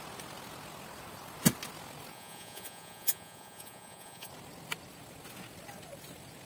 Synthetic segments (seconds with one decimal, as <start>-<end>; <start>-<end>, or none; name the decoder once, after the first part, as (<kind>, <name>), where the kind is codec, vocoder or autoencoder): 2.1-4.3 (vocoder, Vocos)

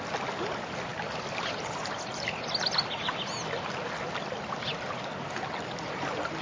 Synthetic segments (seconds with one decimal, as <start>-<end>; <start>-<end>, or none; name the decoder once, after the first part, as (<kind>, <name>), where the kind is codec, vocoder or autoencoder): none

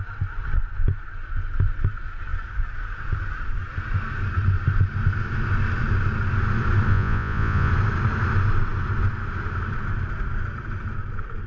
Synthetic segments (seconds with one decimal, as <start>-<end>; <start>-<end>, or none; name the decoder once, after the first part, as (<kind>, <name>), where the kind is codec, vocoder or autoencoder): 6.9-7.7 (vocoder, Vocos)

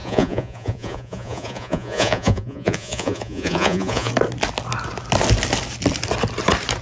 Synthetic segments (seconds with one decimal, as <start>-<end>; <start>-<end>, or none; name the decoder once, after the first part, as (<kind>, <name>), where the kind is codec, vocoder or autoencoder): 0.0-4.1 (vocoder, Vocos)

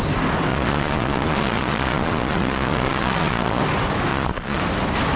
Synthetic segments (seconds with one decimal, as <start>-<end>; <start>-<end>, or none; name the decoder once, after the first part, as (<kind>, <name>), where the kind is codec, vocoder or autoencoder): 0.5-3.6 (vocoder, Vocos); 4.1-4.6

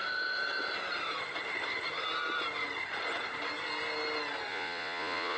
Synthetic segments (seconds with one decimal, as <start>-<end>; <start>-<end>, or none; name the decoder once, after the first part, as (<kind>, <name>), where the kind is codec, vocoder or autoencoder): 4.5-5.4 (vocoder, Vocos)